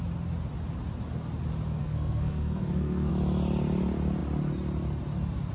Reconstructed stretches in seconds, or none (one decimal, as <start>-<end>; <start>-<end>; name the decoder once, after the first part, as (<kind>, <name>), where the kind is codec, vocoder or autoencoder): 1.8-3.1 (codec, SNAC)

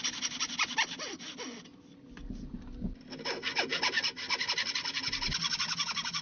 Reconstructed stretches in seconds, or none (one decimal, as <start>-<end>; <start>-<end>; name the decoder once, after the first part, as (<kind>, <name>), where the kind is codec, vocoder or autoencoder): none

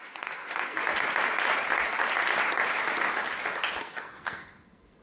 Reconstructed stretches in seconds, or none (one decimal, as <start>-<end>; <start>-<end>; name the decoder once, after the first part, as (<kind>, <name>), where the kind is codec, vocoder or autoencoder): 0.0-0.8 (codec, SNAC); 3.8-5.0

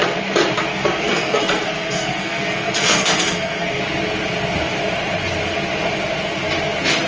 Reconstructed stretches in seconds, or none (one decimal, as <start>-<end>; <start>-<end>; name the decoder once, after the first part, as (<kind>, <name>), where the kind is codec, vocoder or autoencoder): 0.7-3.8 (codec, SNAC)

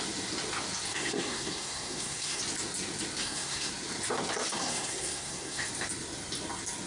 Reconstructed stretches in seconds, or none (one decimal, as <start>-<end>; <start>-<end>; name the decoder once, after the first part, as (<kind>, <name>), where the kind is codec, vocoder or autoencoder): 0.9-2.4 (codec, SNAC); 3.2-3.7; 4.5-5.7

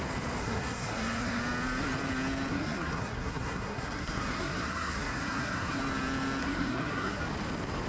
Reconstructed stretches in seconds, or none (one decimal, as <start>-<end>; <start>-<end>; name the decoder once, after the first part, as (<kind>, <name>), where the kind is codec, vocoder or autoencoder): 0.4-1.4 (codec, SNAC); 2.5-5.8; 6.4-7.2